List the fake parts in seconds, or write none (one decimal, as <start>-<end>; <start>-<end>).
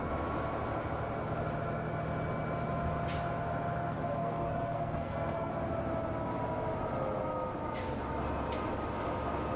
4.2-5.5